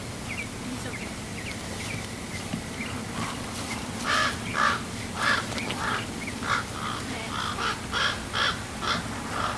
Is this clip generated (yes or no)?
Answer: no